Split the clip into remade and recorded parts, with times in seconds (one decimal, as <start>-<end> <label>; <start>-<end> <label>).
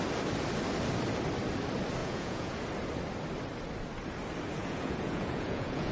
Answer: 0.0-2.0 recorded; 2.0-2.6 remade; 2.6-4.6 recorded; 4.6-5.9 remade